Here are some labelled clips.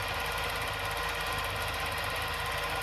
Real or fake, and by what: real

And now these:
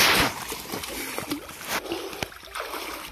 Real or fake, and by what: real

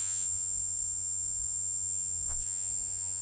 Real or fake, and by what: fake, vocoder, Vocos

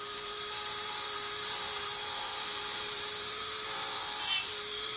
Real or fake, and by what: fake, vocoder, BigVGAN v2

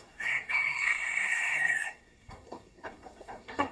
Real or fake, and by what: fake, codec, SNAC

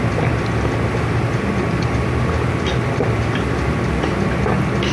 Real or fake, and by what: real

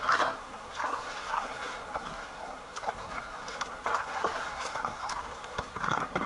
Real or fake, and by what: fake, codec, SNAC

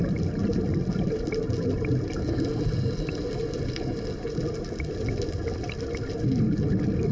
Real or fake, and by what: real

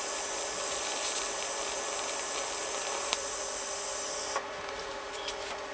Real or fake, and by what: real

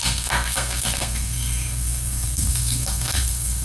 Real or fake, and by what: fake, codec, SNAC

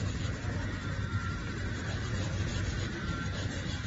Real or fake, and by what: fake, vocoder, BigVGAN v2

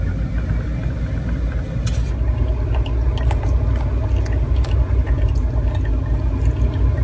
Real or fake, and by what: real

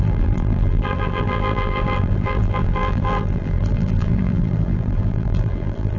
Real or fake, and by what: fake, vocoder, BigVGAN v2